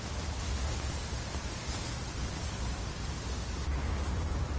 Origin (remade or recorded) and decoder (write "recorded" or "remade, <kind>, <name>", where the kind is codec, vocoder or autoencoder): recorded